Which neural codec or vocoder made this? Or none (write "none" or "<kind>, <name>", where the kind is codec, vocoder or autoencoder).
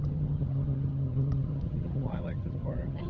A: vocoder, HiFi-GAN